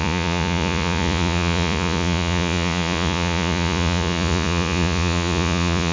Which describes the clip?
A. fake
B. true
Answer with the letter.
A